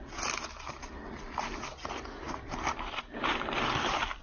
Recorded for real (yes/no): yes